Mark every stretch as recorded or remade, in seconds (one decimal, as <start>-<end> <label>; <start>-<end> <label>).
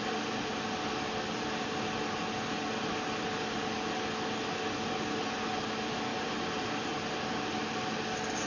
0.0-6.1 recorded; 6.1-7.1 remade; 7.1-8.5 recorded